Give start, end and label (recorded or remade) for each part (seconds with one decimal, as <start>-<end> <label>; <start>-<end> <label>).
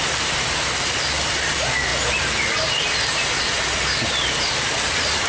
0.0-5.3 recorded